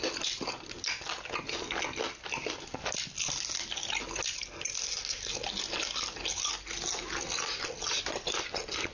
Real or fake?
real